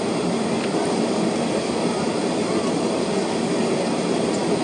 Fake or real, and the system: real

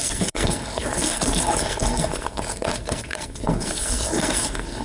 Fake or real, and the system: fake, codec, SNAC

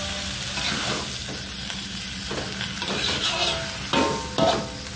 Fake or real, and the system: real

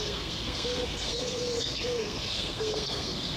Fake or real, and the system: fake, codec, SNAC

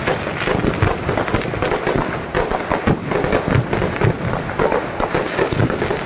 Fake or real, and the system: real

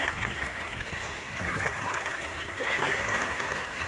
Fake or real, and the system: fake, codec, SNAC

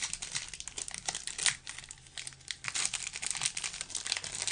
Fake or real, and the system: real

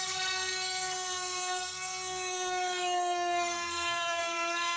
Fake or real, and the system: fake, codec, SNAC